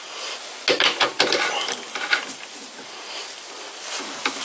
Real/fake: real